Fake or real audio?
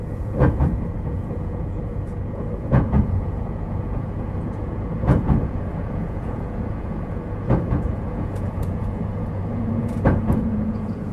fake